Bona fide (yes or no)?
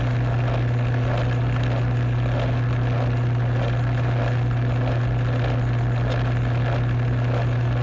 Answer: yes